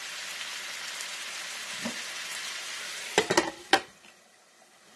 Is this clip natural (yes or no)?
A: yes